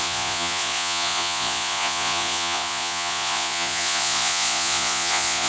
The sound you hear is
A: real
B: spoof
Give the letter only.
B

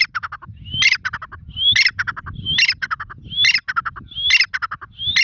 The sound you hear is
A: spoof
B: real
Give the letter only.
B